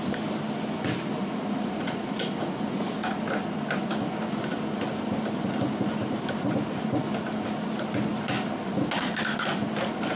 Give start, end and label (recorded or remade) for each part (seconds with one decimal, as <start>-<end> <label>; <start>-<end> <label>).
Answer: 0.0-1.2 recorded; 1.2-3.2 remade; 3.2-10.2 recorded